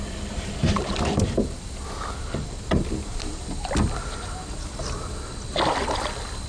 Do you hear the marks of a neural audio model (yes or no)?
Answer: no